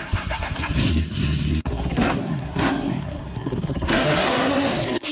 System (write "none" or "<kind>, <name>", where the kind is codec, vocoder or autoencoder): codec, SNAC